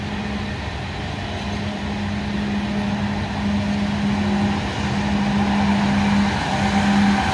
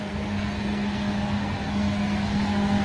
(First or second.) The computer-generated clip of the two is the second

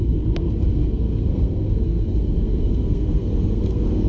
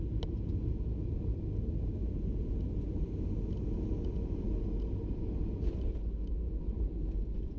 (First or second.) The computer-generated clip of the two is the first